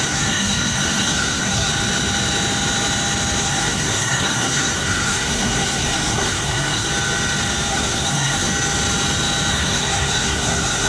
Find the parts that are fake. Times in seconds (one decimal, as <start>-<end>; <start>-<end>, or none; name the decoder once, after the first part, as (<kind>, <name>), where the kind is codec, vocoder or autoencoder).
0.0-1.7 (codec, SNAC); 3.4-6.9; 7.7-8.5; 9.5-10.9